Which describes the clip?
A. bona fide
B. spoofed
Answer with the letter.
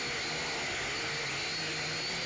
A